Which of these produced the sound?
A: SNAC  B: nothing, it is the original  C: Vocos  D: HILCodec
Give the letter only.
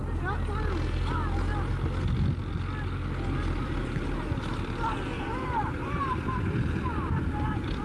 B